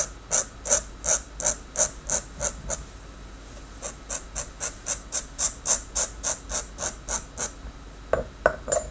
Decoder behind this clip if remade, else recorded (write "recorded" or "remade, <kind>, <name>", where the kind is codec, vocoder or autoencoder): recorded